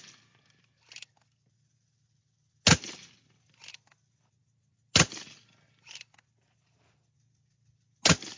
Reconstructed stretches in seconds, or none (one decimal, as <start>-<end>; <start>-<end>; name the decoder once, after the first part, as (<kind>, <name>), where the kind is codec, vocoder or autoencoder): none